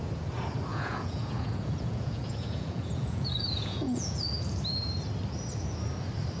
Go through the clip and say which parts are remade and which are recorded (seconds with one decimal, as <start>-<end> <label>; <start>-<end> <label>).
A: 0.0-0.7 recorded; 0.7-4.3 remade; 4.3-6.4 recorded